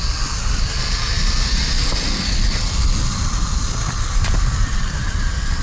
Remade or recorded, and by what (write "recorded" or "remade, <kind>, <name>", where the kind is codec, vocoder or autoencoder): recorded